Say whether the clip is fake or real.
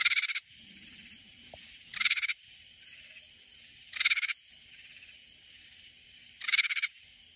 fake